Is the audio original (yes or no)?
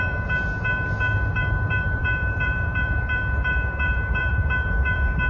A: no